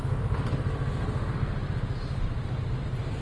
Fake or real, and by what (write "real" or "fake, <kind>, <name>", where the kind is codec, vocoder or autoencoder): real